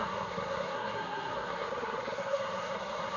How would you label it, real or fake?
fake